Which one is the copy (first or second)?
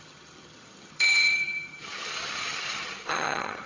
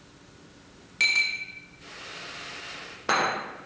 first